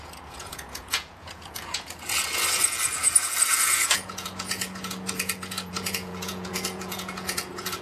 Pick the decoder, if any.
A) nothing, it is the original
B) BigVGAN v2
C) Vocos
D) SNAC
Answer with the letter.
C